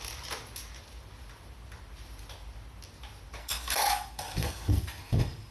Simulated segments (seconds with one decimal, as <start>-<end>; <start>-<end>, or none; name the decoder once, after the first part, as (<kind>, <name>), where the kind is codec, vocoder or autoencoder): 3.4-5.5 (codec, SNAC)